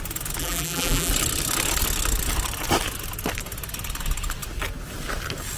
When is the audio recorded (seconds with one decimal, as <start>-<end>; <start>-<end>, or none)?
0.0-0.4; 1.1-5.6